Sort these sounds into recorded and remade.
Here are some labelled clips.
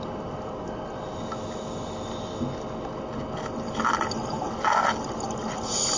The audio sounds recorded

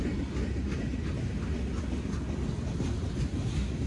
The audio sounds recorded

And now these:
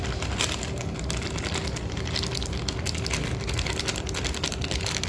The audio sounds recorded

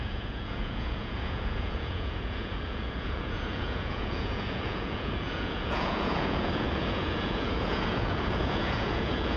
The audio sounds remade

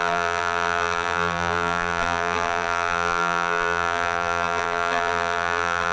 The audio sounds remade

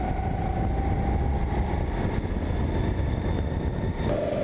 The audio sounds recorded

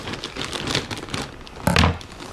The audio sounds recorded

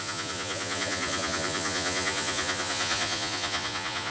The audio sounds remade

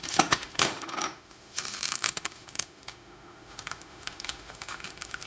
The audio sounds remade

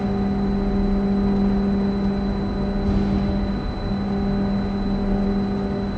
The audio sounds recorded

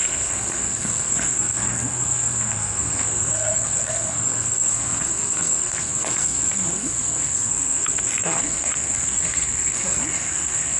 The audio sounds remade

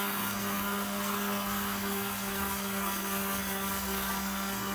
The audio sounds remade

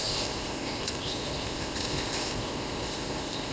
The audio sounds remade